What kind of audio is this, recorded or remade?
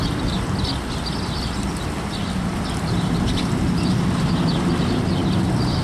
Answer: recorded